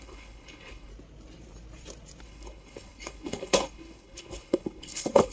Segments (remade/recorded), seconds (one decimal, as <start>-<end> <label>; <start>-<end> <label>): 0.0-0.9 remade; 0.9-2.2 recorded; 2.2-5.3 remade